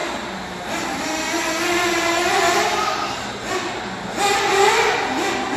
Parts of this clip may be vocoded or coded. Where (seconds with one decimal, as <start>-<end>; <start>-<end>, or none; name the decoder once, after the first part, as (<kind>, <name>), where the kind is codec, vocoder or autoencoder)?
none